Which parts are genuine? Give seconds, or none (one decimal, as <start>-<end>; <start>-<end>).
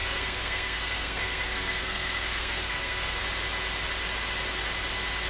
3.2-5.3